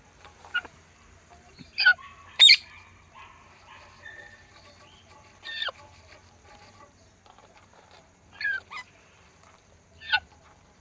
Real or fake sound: fake